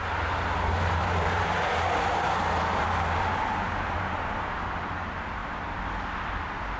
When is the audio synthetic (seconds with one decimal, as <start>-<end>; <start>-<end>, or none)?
1.0-4.6